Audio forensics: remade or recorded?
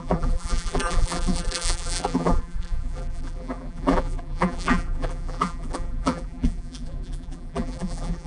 remade